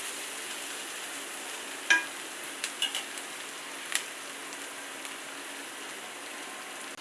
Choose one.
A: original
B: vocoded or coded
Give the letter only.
A